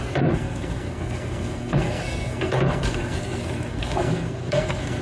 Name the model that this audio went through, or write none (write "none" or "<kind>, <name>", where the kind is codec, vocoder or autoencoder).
codec, SNAC